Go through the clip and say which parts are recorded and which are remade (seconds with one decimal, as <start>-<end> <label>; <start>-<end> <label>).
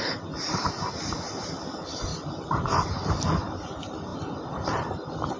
0.0-5.4 recorded